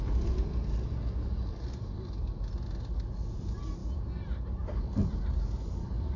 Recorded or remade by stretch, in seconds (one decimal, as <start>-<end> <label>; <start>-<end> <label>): 0.0-6.2 recorded